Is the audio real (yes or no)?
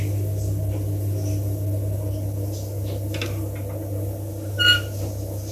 yes